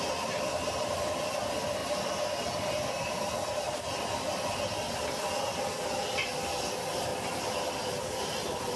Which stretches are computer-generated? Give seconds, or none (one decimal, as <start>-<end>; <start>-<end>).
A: none